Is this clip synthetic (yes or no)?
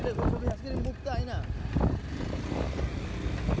no